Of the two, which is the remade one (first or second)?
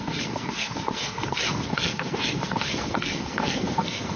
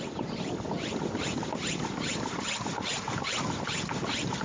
first